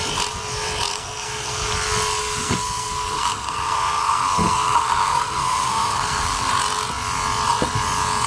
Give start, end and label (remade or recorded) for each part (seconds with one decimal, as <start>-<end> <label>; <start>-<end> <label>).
0.0-0.9 recorded; 0.9-1.7 remade; 1.7-2.2 recorded; 2.2-6.5 remade; 6.5-8.3 recorded